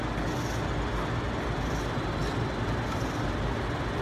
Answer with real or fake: real